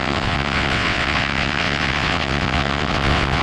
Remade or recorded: remade